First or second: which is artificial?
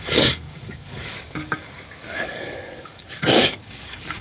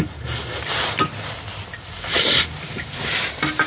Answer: first